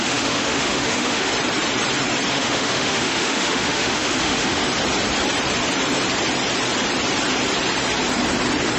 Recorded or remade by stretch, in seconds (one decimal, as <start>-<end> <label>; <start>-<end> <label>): 0.0-1.3 remade; 1.3-2.3 recorded; 2.3-4.6 remade; 4.6-8.8 recorded